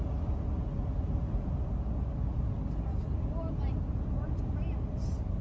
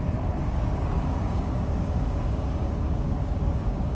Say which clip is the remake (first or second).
second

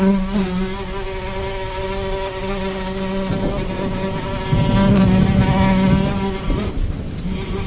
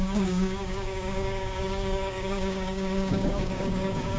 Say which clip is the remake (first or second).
second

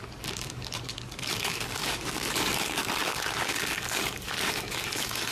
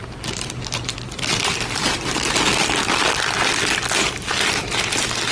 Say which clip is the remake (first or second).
first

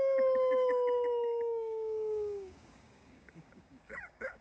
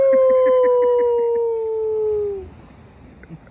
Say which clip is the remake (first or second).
first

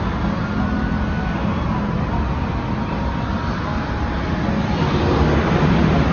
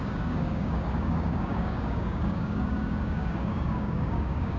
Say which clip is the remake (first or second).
second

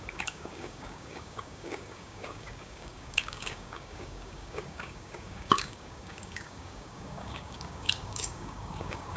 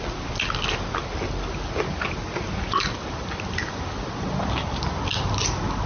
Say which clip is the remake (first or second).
first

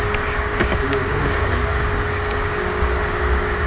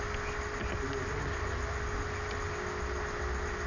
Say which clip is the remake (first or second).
first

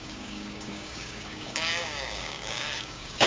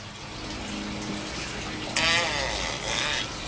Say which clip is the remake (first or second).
first